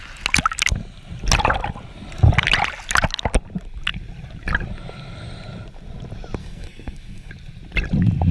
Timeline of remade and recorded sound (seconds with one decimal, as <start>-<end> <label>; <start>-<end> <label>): 0.0-6.4 recorded; 6.4-7.3 remade; 7.3-8.3 recorded